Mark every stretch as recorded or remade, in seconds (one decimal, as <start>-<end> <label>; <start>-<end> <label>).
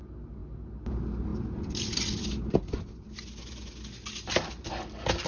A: 0.0-5.3 recorded